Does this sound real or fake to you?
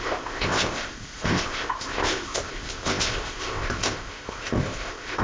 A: fake